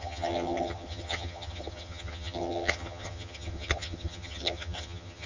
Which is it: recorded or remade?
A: remade